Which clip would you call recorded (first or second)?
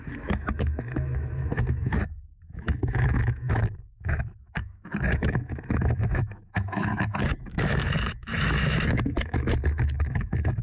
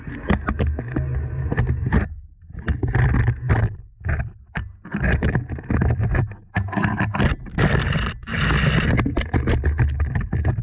second